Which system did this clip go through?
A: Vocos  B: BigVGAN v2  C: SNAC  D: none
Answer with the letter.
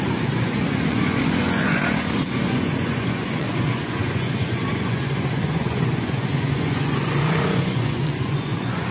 A